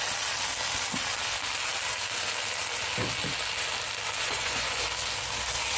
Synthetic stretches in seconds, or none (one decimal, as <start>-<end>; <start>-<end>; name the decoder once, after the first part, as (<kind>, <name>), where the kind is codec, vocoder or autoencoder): 4.2-4.8 (vocoder, Vocos)